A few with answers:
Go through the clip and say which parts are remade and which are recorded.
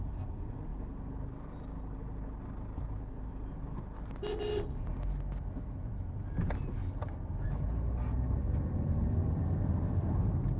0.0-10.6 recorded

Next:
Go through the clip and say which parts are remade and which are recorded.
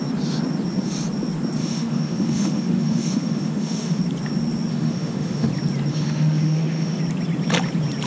0.0-1.6 recorded; 1.6-4.0 remade; 4.0-4.7 recorded; 4.7-5.5 remade; 5.5-5.9 recorded; 5.9-7.0 remade; 7.0-8.1 recorded